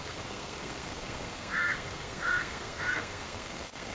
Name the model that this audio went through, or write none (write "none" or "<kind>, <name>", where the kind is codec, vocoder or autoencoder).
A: codec, SNAC